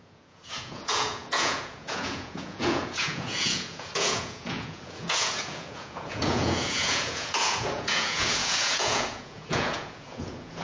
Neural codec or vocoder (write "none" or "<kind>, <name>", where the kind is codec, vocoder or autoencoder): vocoder, Vocos